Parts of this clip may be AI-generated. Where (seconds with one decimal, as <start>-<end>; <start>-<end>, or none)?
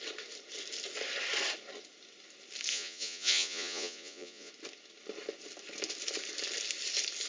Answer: 2.7-4.5